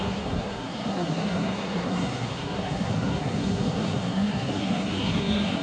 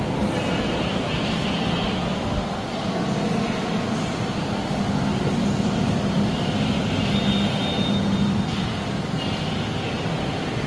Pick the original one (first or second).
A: second